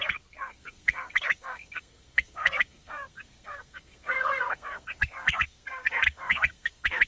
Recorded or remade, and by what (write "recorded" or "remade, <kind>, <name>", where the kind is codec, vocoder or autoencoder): remade, codec, SNAC